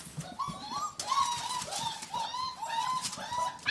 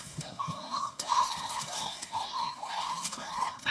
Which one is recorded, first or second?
first